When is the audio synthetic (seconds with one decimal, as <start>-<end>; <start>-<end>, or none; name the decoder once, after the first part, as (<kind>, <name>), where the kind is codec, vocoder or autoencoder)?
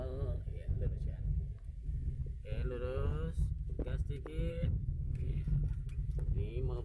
4.5-5.4 (codec, SNAC)